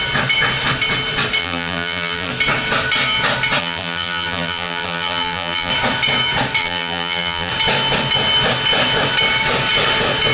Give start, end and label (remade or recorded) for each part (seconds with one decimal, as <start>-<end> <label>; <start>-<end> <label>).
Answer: 0.0-1.4 recorded; 1.4-2.3 remade; 2.3-3.6 recorded; 3.6-5.7 remade; 5.7-6.6 recorded; 6.6-7.5 remade; 7.5-10.3 recorded